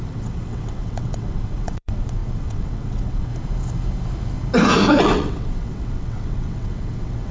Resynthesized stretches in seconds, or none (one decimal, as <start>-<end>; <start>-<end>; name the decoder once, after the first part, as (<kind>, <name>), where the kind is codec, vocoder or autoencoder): 0.0-3.3 (vocoder, WaveNeXt); 5.0-7.3